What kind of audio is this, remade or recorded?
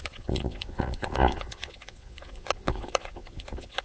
remade